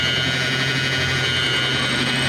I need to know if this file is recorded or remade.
recorded